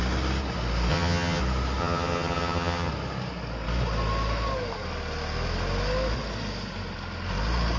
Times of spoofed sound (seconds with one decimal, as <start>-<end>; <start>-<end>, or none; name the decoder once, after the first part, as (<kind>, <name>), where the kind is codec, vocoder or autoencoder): 0.9-1.4 (vocoder, HiFi-GAN); 1.8-2.9